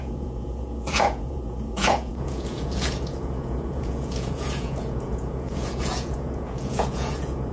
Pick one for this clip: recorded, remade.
remade